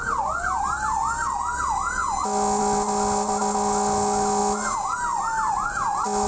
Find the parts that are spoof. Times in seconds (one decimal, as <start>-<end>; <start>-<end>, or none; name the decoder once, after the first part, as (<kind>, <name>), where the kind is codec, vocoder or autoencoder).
none